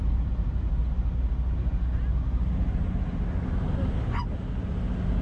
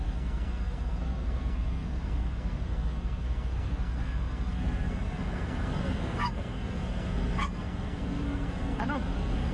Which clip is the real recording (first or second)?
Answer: first